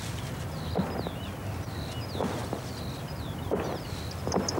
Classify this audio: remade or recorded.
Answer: recorded